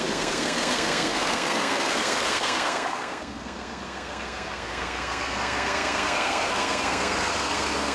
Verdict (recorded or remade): remade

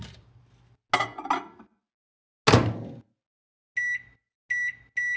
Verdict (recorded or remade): recorded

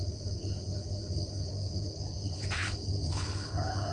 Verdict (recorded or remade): remade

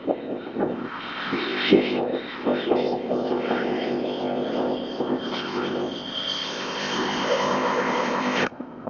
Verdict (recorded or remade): remade